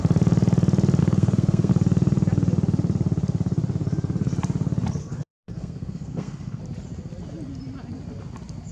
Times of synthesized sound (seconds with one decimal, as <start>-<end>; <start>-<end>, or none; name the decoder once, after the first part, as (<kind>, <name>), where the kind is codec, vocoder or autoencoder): 1.0-1.7 (codec, SNAC); 5.0-6.6